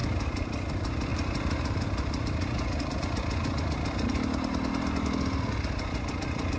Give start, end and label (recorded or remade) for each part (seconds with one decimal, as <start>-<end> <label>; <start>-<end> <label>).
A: 0.0-6.6 recorded